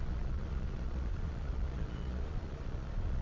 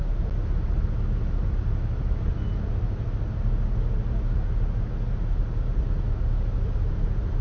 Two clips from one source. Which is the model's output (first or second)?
first